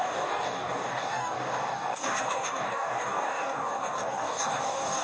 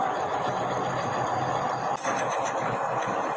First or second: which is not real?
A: first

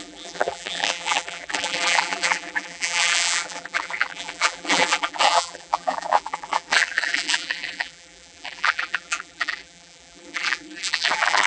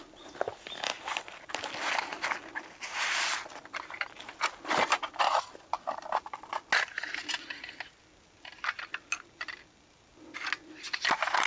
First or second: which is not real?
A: first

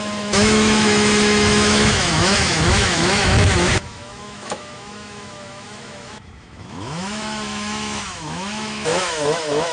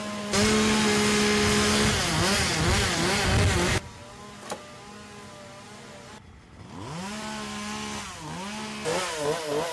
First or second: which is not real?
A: first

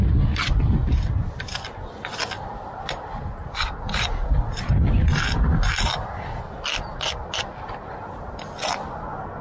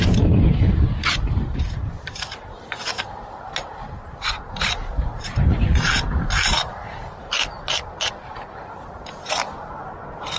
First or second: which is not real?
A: second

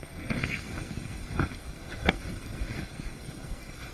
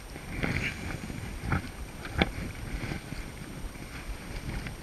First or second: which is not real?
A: first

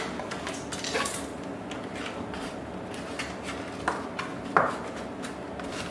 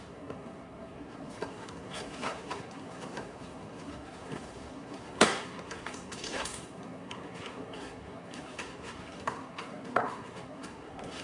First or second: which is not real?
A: second